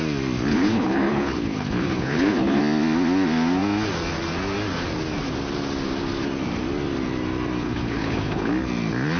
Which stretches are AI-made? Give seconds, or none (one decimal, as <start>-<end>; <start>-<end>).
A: 0.5-2.6; 7.6-8.5